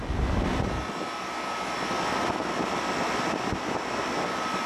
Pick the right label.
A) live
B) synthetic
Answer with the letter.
A